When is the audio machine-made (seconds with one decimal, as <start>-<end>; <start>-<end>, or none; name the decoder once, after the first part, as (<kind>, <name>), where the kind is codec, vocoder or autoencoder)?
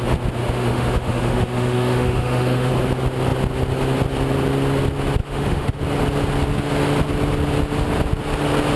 0.4-2.7 (autoencoder, DAC-VAE); 5.2-5.8